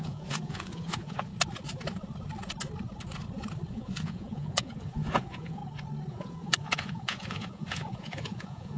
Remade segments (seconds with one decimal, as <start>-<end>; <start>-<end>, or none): 0.0-1.3; 3.7-5.6; 6.1-8.8